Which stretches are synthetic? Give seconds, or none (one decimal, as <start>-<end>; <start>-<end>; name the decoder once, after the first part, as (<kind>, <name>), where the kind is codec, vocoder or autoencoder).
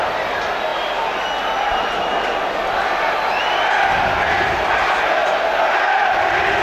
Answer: none